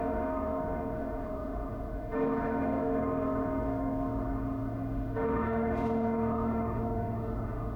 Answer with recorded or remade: remade